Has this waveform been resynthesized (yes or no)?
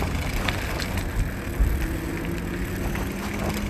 no